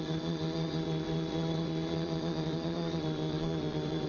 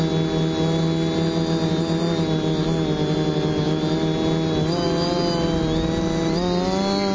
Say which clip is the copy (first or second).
first